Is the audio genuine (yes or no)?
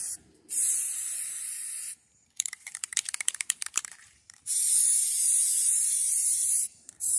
no